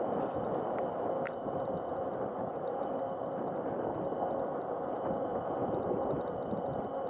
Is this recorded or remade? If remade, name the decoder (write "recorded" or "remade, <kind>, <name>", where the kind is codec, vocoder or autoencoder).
recorded